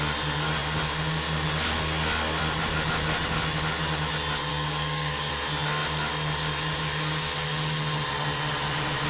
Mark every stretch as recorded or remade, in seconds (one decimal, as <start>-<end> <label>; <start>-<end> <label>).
0.0-4.5 recorded; 4.5-5.3 remade; 5.3-9.1 recorded